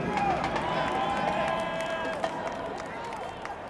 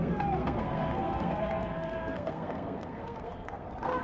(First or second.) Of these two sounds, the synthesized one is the second